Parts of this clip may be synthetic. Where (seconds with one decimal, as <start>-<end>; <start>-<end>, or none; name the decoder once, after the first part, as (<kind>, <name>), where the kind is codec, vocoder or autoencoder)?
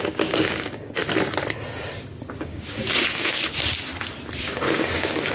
0.0-1.0 (codec, DAC); 2.3-3.9; 4.4-5.3